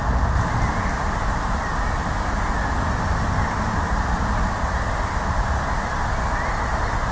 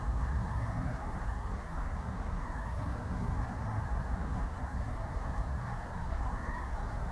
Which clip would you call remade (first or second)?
second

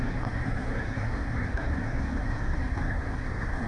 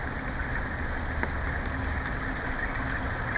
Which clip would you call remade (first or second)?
first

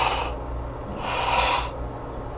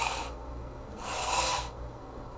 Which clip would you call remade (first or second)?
second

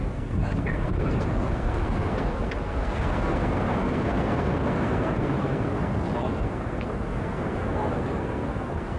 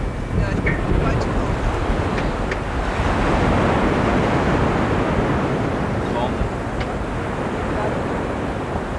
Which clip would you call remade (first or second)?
first